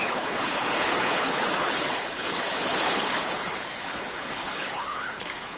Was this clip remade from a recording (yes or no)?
yes